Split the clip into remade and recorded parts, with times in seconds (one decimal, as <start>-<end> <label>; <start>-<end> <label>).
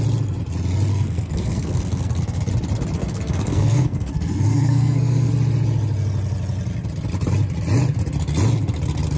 0.0-0.9 recorded; 0.9-2.5 remade; 2.5-3.0 recorded; 3.0-5.3 remade; 5.3-9.2 recorded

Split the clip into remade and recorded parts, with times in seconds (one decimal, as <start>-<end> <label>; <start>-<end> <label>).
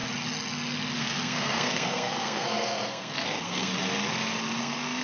0.0-1.0 recorded; 1.0-3.7 remade; 3.7-4.6 recorded; 4.6-5.0 remade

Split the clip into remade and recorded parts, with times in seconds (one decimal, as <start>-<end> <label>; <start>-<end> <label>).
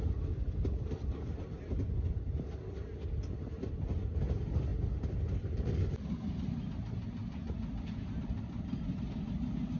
0.0-9.8 recorded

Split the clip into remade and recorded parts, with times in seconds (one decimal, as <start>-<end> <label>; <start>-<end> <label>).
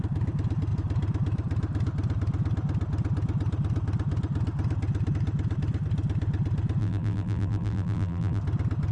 0.0-6.8 recorded; 6.8-8.4 remade; 8.4-8.9 recorded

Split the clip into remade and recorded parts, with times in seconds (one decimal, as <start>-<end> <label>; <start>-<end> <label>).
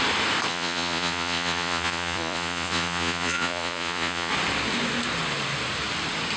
0.0-0.5 recorded; 0.5-4.3 remade; 4.3-6.4 recorded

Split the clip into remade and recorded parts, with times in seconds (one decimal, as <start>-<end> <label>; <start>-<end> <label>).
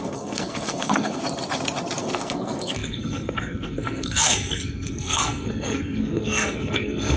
0.0-1.2 remade; 1.2-2.0 recorded; 2.0-7.2 remade